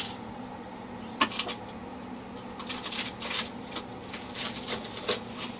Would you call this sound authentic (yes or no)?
yes